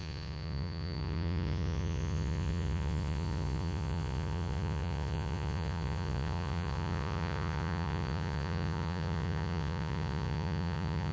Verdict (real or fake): fake